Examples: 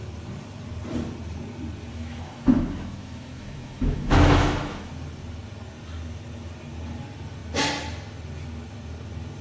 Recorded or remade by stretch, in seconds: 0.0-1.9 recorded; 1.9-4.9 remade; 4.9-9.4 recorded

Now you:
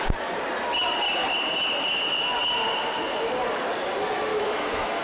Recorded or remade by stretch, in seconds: 0.0-4.3 recorded; 4.3-5.0 remade

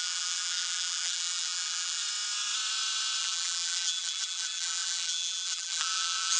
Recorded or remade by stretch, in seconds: 0.0-2.0 remade; 2.0-3.2 recorded; 3.2-6.4 remade

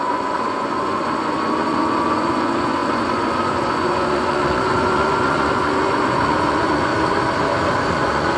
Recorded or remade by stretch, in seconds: 0.0-6.9 remade; 6.9-7.9 recorded; 7.9-8.4 remade

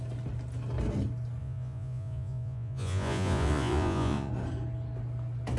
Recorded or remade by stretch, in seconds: 0.0-1.4 recorded; 1.4-4.3 remade; 4.3-5.6 recorded

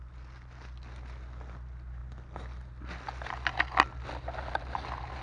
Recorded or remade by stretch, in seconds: 0.0-5.2 recorded

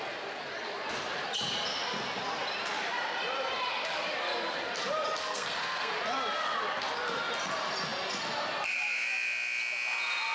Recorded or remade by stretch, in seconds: 0.0-5.2 recorded; 5.2-5.9 remade; 5.9-10.3 recorded

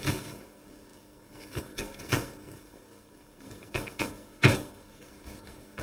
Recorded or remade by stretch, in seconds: 0.0-5.8 remade